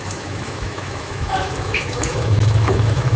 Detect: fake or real fake